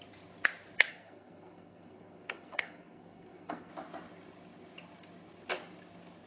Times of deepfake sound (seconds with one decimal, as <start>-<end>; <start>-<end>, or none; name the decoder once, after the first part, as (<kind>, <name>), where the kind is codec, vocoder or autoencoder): 0.9-3.7 (codec, SNAC)